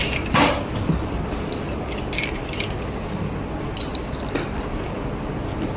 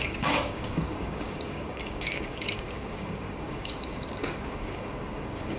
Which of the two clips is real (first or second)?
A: first